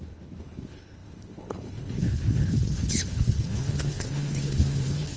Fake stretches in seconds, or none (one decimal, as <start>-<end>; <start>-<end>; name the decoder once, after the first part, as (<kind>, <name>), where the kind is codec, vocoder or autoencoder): 0.0-5.2 (codec, HILCodec)